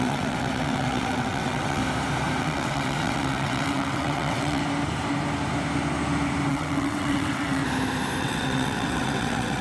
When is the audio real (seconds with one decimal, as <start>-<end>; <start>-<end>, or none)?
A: 1.8-2.4; 4.6-6.5; 7.6-8.2